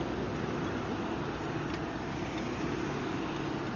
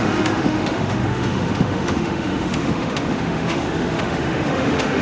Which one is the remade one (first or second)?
second